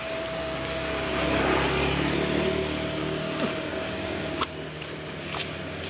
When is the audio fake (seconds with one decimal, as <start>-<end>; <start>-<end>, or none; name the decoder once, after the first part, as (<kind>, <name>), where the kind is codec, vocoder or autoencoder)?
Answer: 0.4-1.4 (codec, DAC); 3.0-4.5